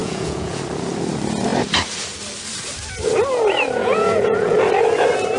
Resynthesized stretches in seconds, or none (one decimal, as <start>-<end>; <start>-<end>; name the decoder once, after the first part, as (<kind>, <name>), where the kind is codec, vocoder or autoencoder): 0.0-0.6 (vocoder, Vocos); 3.8-4.5